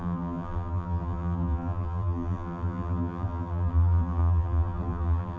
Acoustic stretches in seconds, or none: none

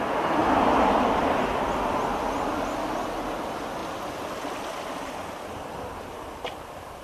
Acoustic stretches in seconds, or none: 0.0-7.0

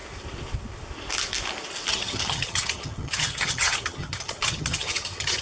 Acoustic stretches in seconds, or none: 0.0-1.9

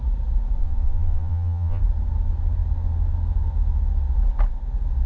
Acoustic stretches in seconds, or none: 0.0-0.6; 1.8-5.1